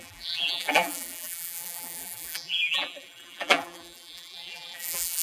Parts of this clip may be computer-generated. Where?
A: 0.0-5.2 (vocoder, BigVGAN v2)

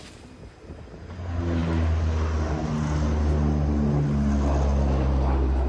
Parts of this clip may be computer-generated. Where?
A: none